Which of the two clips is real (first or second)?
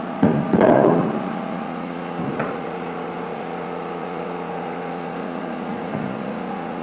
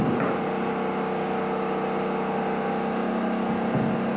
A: second